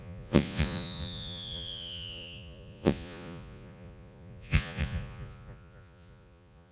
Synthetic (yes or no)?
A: yes